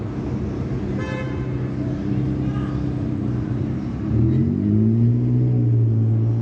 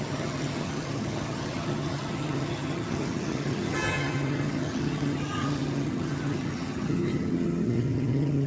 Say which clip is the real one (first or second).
first